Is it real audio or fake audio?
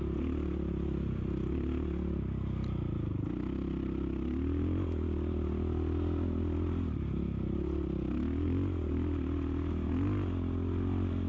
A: real